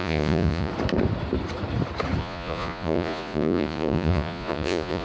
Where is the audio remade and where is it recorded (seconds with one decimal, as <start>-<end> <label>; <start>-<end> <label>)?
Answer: 0.0-0.7 remade; 0.7-2.2 recorded; 2.2-5.0 remade

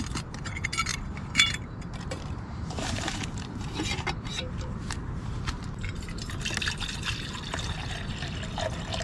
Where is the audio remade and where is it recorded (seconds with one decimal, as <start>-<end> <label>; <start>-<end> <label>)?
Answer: 0.0-0.9 recorded; 0.9-5.4 remade; 5.4-9.0 recorded